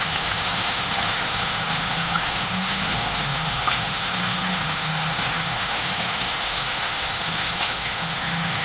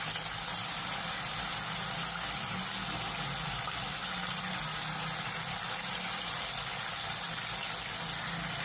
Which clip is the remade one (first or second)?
first